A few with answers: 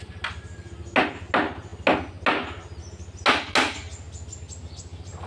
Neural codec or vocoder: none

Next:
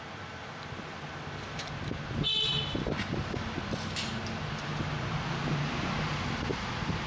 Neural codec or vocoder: none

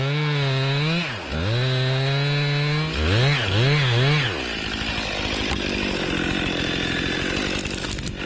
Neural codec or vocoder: none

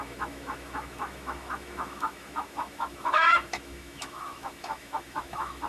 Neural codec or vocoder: autoencoder, DAC-VAE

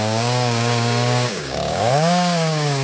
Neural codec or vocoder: codec, DAC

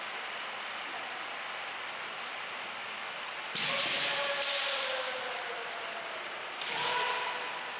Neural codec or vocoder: none